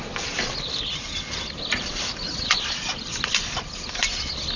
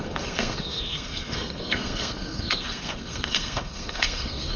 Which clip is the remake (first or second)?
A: second